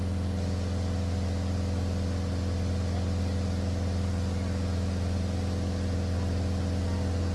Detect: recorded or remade recorded